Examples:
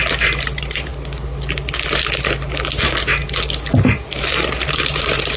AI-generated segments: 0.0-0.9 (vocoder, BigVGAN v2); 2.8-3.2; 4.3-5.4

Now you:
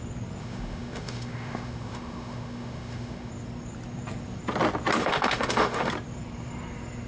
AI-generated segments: 0.4-3.3 (autoencoder, DAC-VAE); 5.0-5.9